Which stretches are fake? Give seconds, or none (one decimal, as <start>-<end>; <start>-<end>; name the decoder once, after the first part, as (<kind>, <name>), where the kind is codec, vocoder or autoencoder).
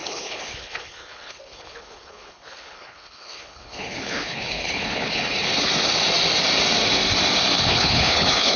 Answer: 0.0-5.7 (codec, HILCodec); 7.7-8.6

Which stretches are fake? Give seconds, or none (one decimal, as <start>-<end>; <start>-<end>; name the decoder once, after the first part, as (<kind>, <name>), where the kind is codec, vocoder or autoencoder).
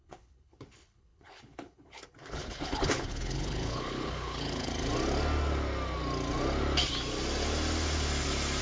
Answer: 0.0-4.7 (codec, HILCodec)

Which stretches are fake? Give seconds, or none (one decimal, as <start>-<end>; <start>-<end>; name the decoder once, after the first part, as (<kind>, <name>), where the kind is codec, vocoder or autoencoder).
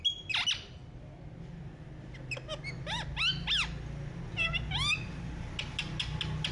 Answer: none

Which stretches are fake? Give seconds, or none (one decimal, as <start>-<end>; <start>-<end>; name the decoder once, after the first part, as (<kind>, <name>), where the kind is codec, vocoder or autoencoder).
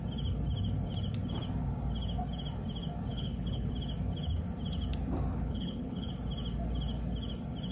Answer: 3.1-3.7 (codec, HILCodec); 5.3-6.1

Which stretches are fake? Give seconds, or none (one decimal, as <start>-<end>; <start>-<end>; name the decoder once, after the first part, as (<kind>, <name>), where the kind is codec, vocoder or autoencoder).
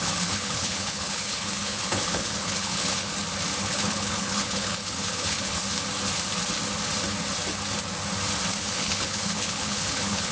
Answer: 0.0-3.1 (codec, HILCodec); 3.6-5.6; 8.6-10.3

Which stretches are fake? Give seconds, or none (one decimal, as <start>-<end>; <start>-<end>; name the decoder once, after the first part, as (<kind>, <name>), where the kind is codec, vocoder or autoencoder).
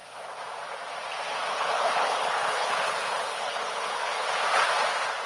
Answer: 1.5-4.3 (codec, HILCodec)